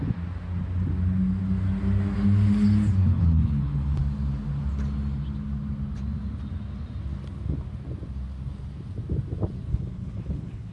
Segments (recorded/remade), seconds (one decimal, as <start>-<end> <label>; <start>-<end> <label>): 0.0-3.1 recorded; 3.1-4.0 remade; 4.0-9.7 recorded; 9.7-10.7 remade